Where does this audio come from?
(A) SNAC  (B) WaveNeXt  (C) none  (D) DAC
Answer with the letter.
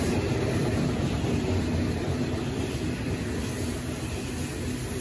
C